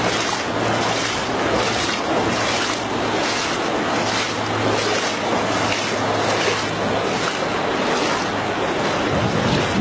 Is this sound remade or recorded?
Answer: recorded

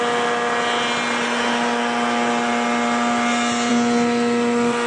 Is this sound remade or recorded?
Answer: recorded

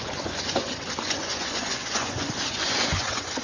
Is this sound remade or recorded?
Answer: remade